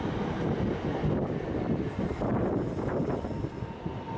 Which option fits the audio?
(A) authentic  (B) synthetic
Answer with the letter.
A